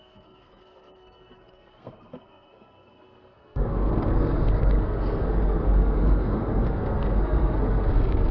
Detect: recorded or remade remade